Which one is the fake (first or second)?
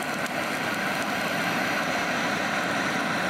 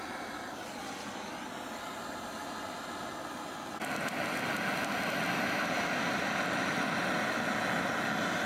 first